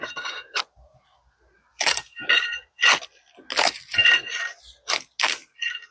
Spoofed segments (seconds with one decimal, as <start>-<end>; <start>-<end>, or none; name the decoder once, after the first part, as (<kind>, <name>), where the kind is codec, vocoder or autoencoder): none